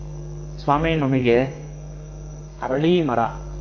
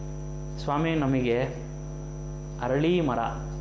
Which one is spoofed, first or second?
first